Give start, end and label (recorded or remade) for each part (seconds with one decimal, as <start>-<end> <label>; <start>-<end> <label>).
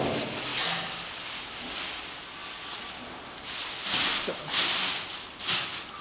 0.0-6.0 recorded